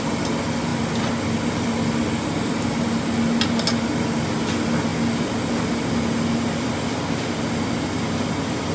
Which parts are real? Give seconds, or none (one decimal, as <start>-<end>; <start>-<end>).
0.0-8.7

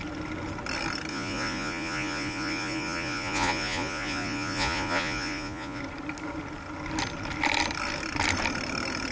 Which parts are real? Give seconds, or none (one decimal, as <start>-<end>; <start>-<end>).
0.0-1.1; 5.8-9.1

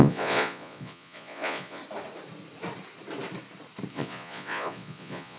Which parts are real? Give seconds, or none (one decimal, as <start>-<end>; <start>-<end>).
1.8-3.9